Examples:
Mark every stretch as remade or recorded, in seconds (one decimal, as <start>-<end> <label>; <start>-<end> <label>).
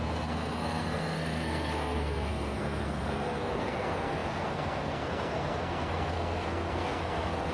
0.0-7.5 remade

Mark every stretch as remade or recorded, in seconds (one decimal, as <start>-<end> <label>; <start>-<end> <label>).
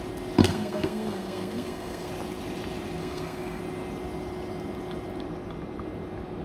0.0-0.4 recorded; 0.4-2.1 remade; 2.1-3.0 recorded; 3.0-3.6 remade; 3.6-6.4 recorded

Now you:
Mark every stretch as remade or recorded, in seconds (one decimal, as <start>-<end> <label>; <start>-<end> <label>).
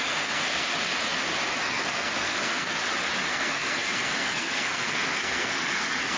0.0-0.7 remade; 0.7-1.6 recorded; 1.6-2.8 remade; 2.8-3.3 recorded; 3.3-6.2 remade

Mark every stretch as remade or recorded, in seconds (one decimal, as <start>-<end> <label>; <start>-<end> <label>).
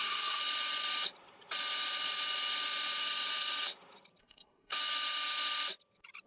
0.0-0.4 remade; 0.4-4.2 recorded; 4.2-4.7 remade; 4.7-6.3 recorded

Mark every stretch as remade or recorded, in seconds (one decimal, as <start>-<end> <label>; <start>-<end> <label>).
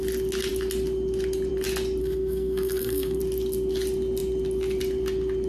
0.0-2.0 recorded; 2.0-3.2 remade; 3.2-5.5 recorded